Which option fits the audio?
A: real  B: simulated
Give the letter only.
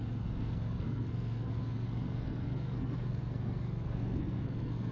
B